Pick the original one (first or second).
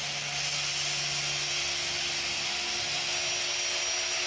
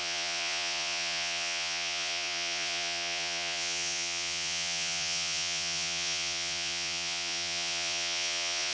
first